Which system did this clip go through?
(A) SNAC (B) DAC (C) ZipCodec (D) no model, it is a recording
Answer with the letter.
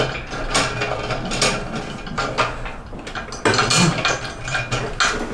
D